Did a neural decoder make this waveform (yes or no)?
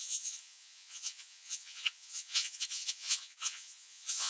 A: yes